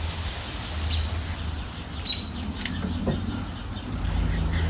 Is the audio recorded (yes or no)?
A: yes